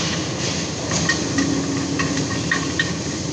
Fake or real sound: real